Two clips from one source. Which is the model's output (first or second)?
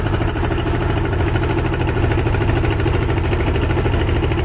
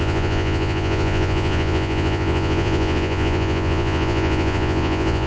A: second